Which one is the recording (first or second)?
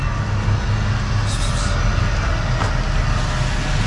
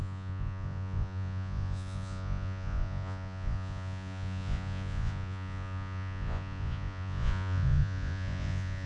first